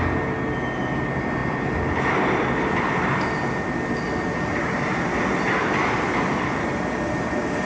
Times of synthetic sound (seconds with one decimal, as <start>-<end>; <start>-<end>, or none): none